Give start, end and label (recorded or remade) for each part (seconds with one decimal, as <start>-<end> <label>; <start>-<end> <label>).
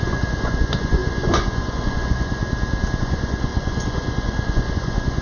0.0-2.4 remade; 2.4-3.0 recorded; 3.0-5.2 remade